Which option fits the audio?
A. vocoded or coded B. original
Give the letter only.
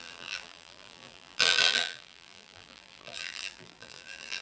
A